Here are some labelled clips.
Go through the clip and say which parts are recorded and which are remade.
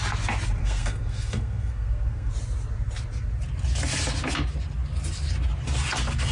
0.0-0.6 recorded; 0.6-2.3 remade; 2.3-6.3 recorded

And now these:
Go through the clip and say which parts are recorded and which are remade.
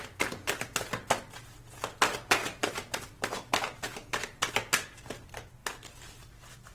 0.0-6.7 recorded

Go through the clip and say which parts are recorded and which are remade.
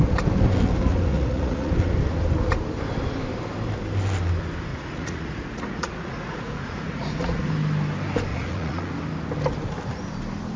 0.0-1.1 recorded; 1.1-1.7 remade; 1.7-4.7 recorded; 4.7-7.5 remade; 7.5-8.3 recorded; 8.3-8.9 remade; 8.9-10.6 recorded